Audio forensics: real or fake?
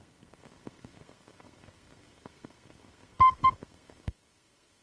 fake